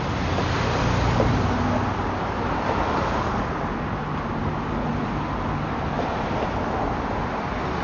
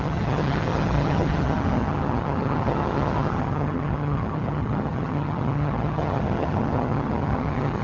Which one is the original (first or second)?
first